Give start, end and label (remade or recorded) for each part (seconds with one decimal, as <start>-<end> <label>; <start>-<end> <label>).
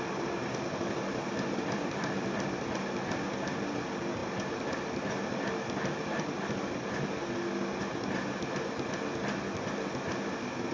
0.0-10.7 recorded